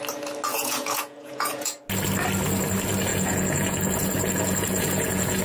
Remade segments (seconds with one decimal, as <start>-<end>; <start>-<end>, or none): 0.5-1.8; 3.1-5.4